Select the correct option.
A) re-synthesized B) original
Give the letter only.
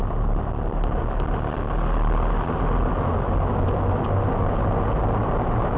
B